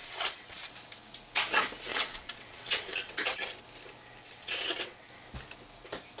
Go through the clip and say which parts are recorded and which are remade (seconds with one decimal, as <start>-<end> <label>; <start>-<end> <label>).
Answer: 0.0-0.7 remade; 0.7-1.9 recorded; 1.9-3.6 remade; 3.6-4.2 recorded; 4.2-5.1 remade; 5.1-6.2 recorded